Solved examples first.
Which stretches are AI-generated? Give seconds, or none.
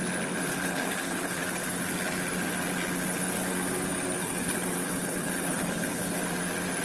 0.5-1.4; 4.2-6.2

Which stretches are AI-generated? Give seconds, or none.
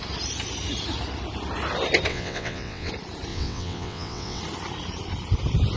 2.1-2.9; 3.3-4.4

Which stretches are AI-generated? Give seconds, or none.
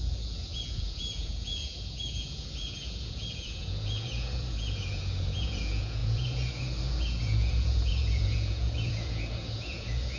0.0-10.2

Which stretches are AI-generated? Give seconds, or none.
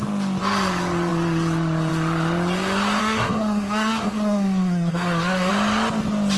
3.0-5.5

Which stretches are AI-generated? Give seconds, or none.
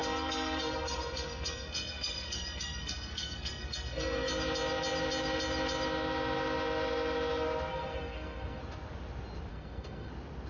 0.0-4.3; 7.7-8.6; 9.5-10.1